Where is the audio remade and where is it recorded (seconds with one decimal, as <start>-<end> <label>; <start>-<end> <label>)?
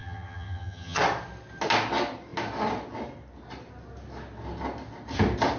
0.0-1.0 remade; 1.0-5.6 recorded